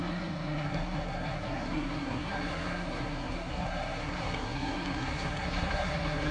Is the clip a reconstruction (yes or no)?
yes